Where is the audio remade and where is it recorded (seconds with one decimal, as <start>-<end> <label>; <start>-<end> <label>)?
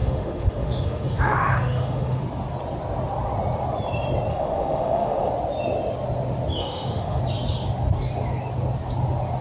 0.0-2.2 remade; 2.2-4.3 recorded; 4.3-5.3 remade; 5.3-6.6 recorded; 6.6-7.2 remade; 7.2-9.4 recorded